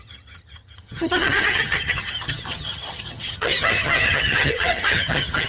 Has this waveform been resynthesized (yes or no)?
yes